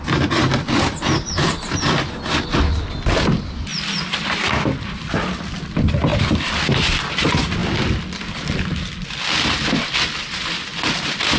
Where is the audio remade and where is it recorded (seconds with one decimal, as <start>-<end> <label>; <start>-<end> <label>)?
0.0-11.4 recorded